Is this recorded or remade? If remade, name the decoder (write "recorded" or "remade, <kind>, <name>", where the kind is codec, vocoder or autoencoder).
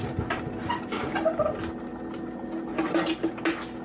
recorded